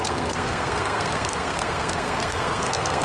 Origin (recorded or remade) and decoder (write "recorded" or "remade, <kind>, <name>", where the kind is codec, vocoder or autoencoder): remade, codec, SNAC